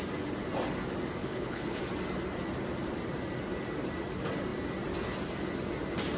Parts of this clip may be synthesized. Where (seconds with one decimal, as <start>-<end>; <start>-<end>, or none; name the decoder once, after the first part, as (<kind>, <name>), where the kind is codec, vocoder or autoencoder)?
1.2-1.8 (codec, HILCodec)